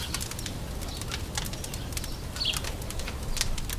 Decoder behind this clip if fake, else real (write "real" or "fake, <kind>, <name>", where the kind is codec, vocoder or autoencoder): real